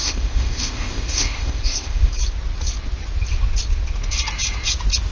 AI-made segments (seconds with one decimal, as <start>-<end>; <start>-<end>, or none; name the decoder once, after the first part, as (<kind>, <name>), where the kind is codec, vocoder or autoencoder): 0.0-2.1 (codec, ZipCodec)